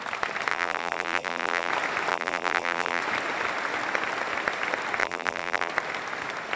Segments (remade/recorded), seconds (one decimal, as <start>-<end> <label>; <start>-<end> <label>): 0.0-0.5 recorded; 0.5-1.7 remade; 1.7-2.1 recorded; 2.1-3.0 remade; 3.0-5.0 recorded; 5.0-5.7 remade; 5.7-6.6 recorded